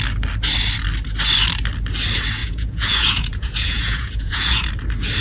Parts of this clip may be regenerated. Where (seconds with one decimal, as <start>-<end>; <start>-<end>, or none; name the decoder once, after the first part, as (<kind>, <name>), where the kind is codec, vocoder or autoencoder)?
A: 2.4-4.7 (vocoder, Vocos)